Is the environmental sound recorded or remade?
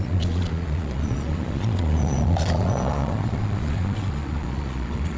remade